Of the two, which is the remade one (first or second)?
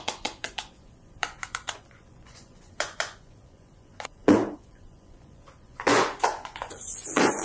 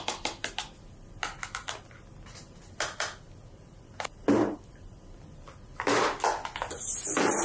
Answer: first